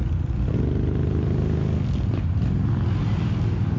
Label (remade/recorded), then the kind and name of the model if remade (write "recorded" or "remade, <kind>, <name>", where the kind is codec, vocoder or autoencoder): recorded